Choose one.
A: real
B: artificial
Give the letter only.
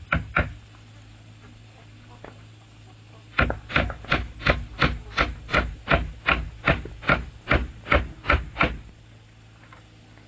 A